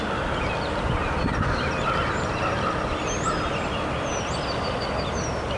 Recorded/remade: recorded